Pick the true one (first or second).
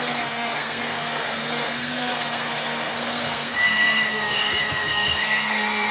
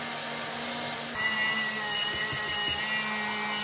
second